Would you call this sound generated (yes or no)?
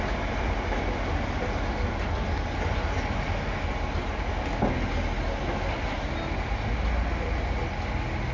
no